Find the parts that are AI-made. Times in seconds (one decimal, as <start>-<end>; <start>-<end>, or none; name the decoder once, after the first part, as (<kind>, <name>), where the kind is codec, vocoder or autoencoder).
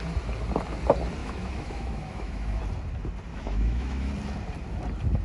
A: 1.2-2.6 (autoencoder, DAC-VAE); 3.3-4.1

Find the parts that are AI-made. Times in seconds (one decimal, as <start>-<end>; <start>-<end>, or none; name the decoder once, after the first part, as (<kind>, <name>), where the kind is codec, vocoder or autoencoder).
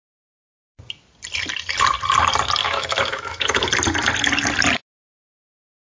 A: 2.6-3.7 (autoencoder, DAC-VAE)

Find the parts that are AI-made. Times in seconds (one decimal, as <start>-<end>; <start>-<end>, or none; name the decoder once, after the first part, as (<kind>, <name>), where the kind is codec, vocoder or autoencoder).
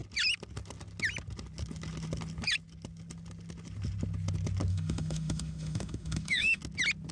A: 4.7-6.6 (autoencoder, DAC-VAE)